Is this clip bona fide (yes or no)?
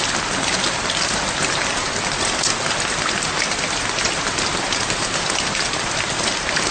yes